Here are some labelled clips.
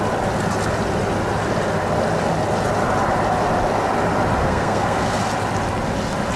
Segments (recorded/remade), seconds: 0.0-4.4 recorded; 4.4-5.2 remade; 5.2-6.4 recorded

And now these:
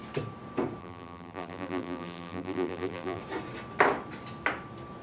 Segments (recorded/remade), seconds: 0.0-0.8 recorded; 0.8-3.2 remade; 3.2-5.0 recorded

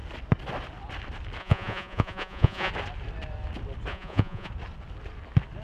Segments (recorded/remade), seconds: 0.0-1.4 recorded; 1.4-2.7 remade; 2.7-3.9 recorded; 3.9-4.5 remade; 4.5-5.6 recorded

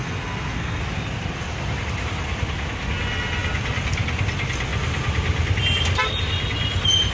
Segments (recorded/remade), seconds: 0.0-0.8 remade; 0.8-7.1 recorded

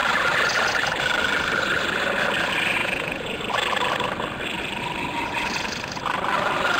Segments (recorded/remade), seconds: 0.0-2.8 recorded; 2.8-3.4 remade; 3.4-6.8 recorded

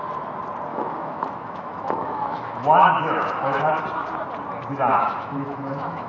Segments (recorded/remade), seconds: 0.0-0.7 recorded; 0.7-3.7 remade; 3.7-4.9 recorded; 4.9-6.1 remade